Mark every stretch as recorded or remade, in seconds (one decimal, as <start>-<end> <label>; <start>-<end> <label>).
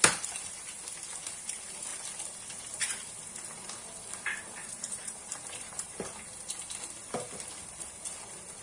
0.0-4.6 recorded; 4.6-6.6 remade; 6.6-8.6 recorded